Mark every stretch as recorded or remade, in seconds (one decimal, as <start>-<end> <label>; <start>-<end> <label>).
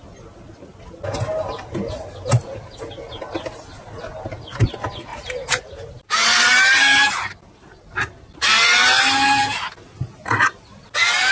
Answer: 0.0-5.1 recorded; 5.1-7.1 remade; 7.1-11.3 recorded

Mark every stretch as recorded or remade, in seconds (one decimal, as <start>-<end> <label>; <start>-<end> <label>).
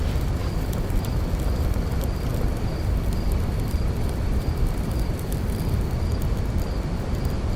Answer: 0.0-2.3 recorded; 2.3-5.6 remade; 5.6-7.6 recorded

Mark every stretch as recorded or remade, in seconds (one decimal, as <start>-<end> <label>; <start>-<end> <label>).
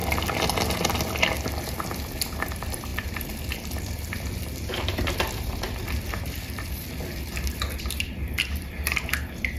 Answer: 0.0-1.6 recorded; 1.6-9.6 remade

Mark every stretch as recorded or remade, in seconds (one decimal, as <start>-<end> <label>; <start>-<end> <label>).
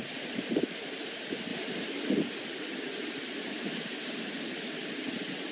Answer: 0.0-1.5 recorded; 1.5-2.1 remade; 2.1-3.0 recorded; 3.0-4.8 remade; 4.8-5.5 recorded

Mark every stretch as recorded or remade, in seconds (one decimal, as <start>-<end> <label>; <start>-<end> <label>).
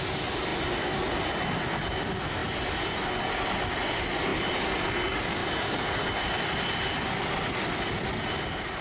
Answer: 0.0-0.5 recorded; 0.5-1.0 remade; 1.0-4.3 recorded; 4.3-4.9 remade; 4.9-5.4 recorded; 5.4-8.8 remade